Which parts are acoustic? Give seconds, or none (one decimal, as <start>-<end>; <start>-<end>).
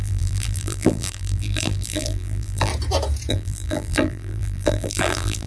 2.7-3.3